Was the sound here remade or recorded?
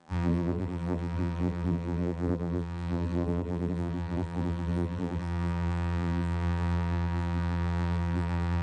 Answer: remade